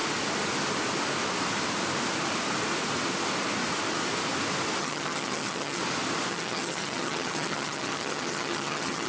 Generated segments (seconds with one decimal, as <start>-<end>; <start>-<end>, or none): 4.8-5.8; 6.3-9.1